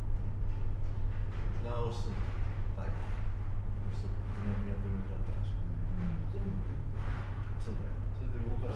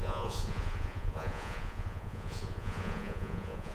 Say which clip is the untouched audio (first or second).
first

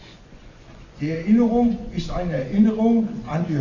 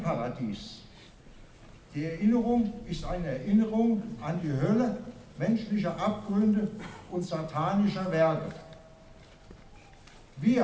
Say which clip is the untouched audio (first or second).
second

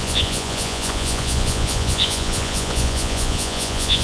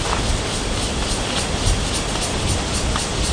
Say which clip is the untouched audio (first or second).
second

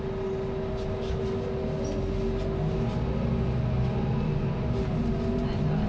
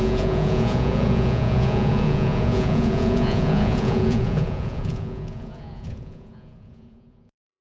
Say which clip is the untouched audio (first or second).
first